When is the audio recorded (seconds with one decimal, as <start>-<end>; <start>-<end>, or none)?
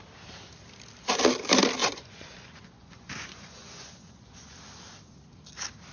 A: 0.0-1.8; 4.6-5.9